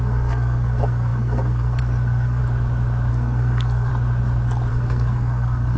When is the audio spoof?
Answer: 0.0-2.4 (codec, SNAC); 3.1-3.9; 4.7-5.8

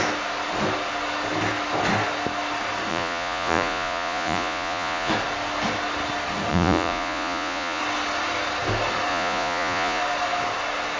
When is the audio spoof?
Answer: 2.9-5.1 (vocoder, Vocos); 6.5-7.8; 9.1-10.0

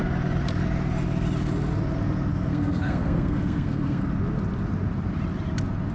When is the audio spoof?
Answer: 2.3-4.0 (codec, SNAC)